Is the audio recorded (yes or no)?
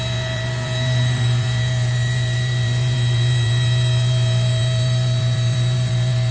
no